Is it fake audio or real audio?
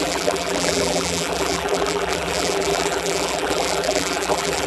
fake